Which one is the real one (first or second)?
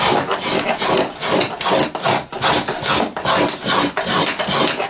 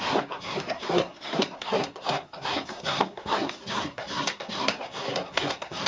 first